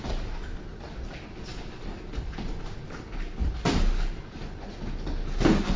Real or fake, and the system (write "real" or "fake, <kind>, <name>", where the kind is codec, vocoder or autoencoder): real